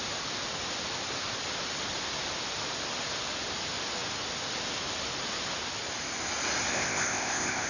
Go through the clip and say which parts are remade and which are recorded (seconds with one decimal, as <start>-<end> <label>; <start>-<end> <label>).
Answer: 0.0-6.7 recorded; 6.7-7.7 remade